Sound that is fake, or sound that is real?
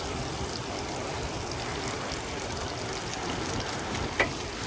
real